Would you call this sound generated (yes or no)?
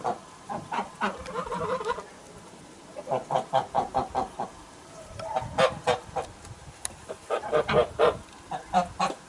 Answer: yes